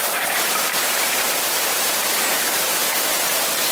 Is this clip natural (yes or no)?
no